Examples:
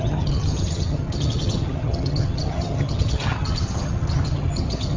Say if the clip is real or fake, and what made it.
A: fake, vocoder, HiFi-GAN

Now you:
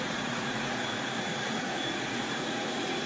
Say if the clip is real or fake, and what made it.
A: fake, vocoder, Vocos